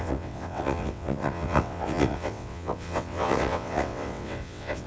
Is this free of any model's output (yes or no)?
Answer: no